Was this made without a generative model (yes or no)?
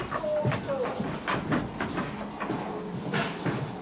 yes